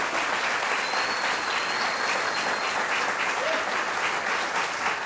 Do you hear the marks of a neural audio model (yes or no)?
no